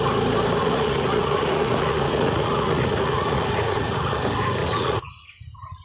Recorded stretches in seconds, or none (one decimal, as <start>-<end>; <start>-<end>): 0.0-0.6; 4.1-4.6; 5.3-5.8